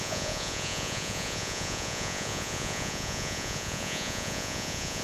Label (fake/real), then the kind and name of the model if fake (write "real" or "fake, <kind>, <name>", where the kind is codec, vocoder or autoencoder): fake, vocoder, Vocos